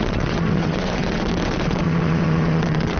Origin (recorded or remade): remade